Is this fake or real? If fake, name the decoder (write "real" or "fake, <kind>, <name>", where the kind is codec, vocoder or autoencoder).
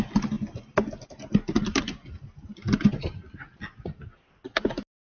real